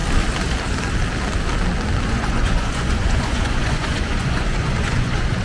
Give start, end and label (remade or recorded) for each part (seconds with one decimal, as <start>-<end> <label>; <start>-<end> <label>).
0.0-2.1 recorded; 2.1-5.4 remade